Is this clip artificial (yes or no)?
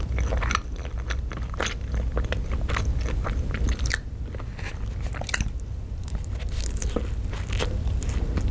no